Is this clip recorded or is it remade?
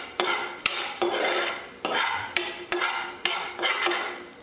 remade